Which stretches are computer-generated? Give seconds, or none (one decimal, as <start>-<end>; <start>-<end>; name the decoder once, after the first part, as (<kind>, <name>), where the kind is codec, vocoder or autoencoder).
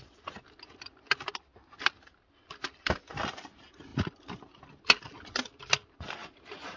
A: 6.2-6.8 (vocoder, BigVGAN v2)